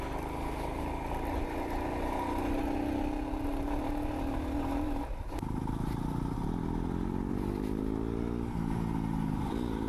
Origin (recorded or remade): recorded